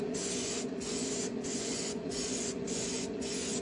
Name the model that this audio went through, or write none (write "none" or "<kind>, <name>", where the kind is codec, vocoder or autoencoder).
vocoder, Vocos